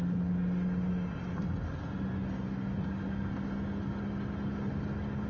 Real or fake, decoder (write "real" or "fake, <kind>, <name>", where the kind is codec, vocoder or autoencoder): real